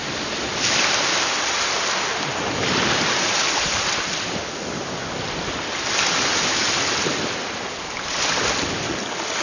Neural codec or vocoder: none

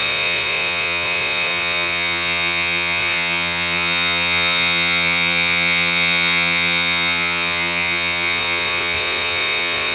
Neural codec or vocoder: vocoder, Vocos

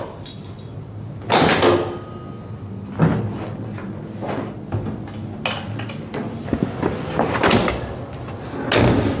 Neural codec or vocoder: none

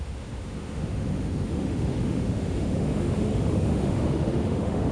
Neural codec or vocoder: autoencoder, DAC-VAE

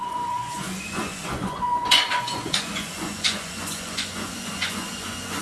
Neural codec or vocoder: vocoder, Vocos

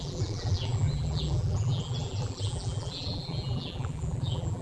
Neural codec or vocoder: vocoder, BigVGAN v2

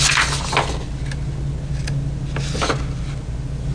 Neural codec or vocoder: none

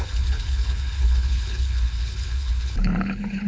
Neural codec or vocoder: codec, HILCodec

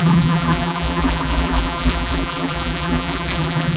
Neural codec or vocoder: vocoder, BigVGAN v2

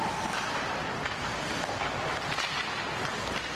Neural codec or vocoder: none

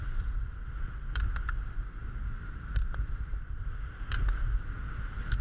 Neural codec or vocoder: none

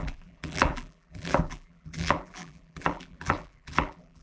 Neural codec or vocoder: vocoder, BigVGAN v2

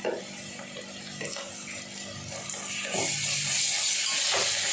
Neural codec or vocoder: none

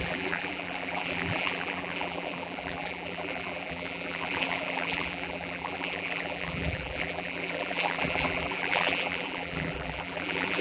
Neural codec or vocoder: vocoder, BigVGAN v2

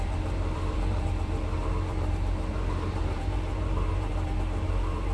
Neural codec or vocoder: vocoder, BigVGAN v2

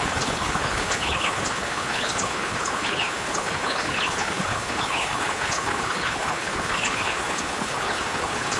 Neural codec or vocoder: codec, HILCodec